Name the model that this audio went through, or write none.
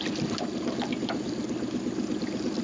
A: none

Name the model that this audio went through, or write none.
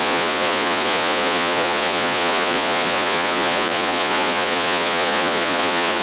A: vocoder, Vocos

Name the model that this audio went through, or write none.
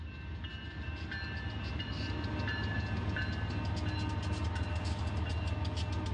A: none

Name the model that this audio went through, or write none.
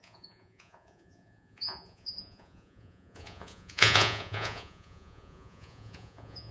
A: vocoder, Vocos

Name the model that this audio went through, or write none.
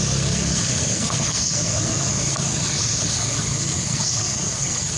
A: codec, SNAC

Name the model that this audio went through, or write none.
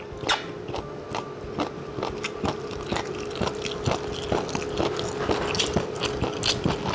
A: none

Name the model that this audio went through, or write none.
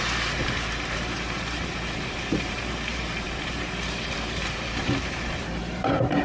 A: vocoder, BigVGAN v2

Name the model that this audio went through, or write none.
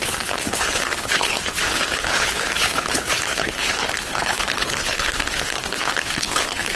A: codec, HILCodec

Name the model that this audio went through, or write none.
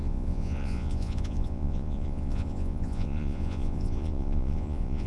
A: vocoder, Vocos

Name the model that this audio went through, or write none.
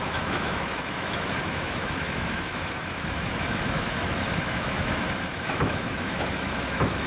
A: autoencoder, DAC-VAE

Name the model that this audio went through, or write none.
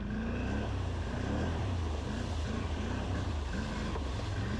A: none